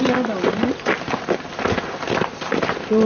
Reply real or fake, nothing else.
real